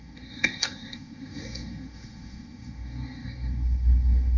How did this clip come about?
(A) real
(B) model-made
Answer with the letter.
B